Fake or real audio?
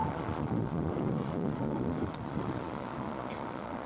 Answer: fake